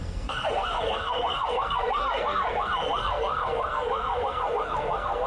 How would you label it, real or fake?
fake